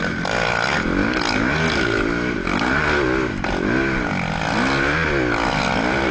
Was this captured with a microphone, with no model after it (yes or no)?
yes